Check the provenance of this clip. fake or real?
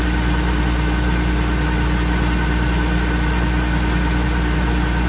real